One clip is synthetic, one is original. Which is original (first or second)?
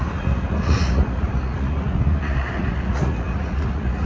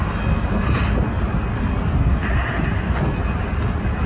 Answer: second